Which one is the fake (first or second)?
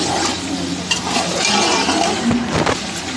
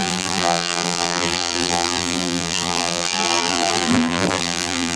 second